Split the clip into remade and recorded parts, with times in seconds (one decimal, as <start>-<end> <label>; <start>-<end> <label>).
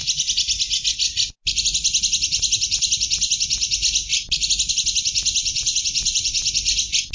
0.0-5.4 recorded; 5.4-6.5 remade; 6.5-7.1 recorded